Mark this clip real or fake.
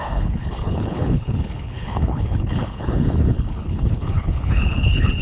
fake